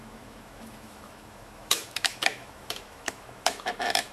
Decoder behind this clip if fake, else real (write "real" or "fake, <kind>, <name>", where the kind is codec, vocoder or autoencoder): fake, autoencoder, DAC-VAE